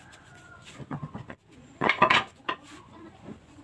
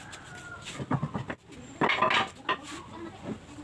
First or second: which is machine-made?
first